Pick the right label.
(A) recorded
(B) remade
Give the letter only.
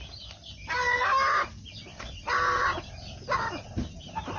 A